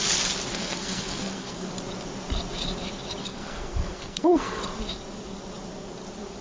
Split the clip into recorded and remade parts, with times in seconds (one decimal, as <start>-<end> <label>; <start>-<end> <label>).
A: 0.0-0.5 recorded; 0.5-1.7 remade; 1.7-3.2 recorded; 3.2-4.6 remade; 4.6-6.4 recorded